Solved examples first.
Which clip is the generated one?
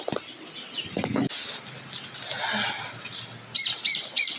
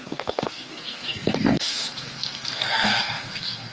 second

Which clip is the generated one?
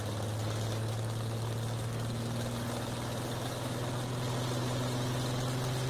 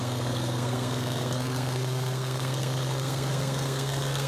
second